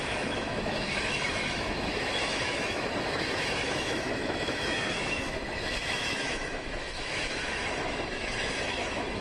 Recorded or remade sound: remade